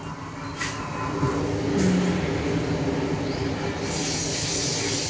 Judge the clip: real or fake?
real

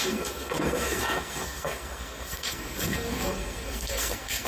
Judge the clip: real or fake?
fake